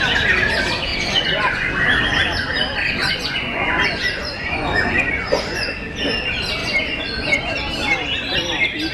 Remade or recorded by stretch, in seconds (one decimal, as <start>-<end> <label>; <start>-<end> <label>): 0.0-0.9 recorded; 0.9-1.7 remade; 1.7-3.0 recorded; 3.0-5.7 remade; 5.7-6.6 recorded; 6.6-7.5 remade; 7.5-8.9 recorded